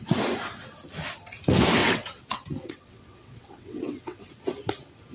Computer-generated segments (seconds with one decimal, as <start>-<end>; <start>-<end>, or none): 1.8-4.3